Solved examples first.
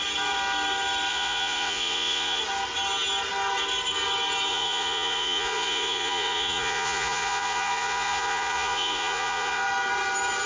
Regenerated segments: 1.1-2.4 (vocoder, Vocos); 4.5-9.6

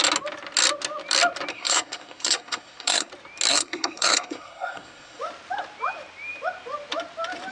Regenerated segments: 1.5-3.1 (codec, SNAC); 3.5-5.2

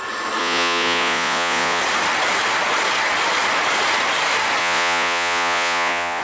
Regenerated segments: 0.4-1.8 (vocoder, Vocos); 4.6-6.2

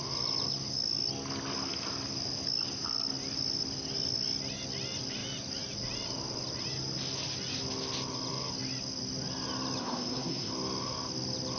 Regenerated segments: 9.8-10.5 (codec, SNAC)